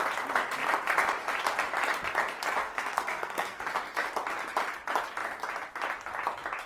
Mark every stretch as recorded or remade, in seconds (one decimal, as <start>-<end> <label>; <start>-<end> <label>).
0.0-2.6 recorded; 2.6-3.6 remade; 3.6-6.7 recorded